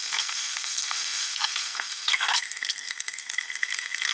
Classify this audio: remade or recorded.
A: remade